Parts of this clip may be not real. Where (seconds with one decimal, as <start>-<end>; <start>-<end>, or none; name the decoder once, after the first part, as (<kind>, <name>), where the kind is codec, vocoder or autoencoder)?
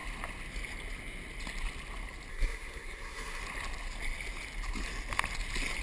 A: 2.3-3.4 (codec, SNAC)